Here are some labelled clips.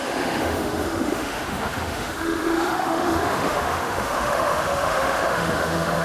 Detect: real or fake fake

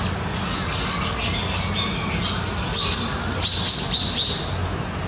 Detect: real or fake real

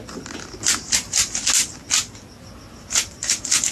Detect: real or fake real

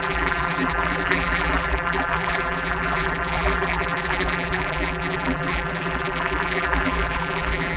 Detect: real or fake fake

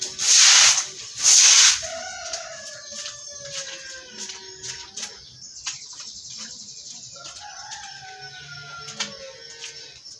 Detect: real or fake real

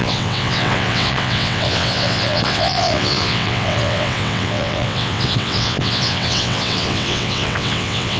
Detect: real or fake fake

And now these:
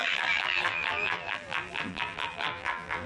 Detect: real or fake fake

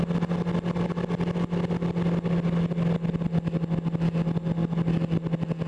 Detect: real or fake real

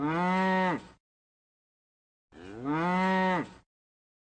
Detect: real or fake real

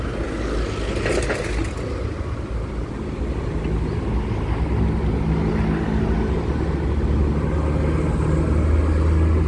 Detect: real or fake real